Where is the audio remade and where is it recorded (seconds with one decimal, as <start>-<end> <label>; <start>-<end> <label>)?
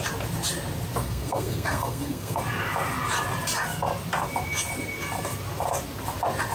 0.0-1.0 recorded; 1.0-2.4 remade; 2.4-6.5 recorded